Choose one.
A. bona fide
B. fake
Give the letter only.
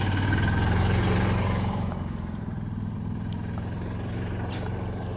B